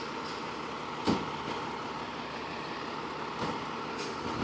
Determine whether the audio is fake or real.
real